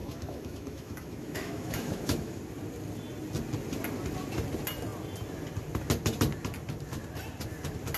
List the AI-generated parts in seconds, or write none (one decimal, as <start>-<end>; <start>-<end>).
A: 0.0-2.4